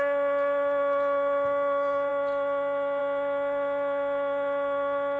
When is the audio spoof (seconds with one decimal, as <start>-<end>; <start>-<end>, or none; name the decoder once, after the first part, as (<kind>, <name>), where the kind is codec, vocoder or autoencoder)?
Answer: none

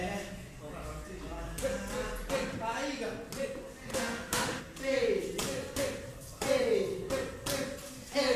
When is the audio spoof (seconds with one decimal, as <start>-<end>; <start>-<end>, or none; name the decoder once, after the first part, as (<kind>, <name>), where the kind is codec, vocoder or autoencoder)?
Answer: 3.9-4.6 (autoencoder, DAC-VAE)

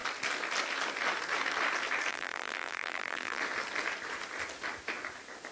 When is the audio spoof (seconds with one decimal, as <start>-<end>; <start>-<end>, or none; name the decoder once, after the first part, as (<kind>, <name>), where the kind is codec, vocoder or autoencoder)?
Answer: 2.1-3.4 (vocoder, BigVGAN v2)

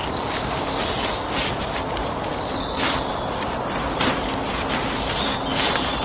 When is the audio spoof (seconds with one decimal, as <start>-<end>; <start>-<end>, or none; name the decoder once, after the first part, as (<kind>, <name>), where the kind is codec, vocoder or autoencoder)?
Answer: 0.0-0.8 (codec, DAC)